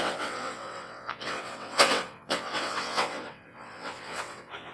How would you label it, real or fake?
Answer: fake